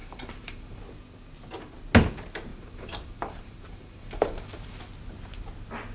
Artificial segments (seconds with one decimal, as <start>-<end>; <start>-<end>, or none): 0.0-0.8; 2.5-4.8